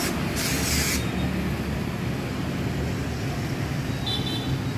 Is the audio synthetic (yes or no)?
no